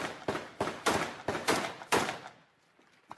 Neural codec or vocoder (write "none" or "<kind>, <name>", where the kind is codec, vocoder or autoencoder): none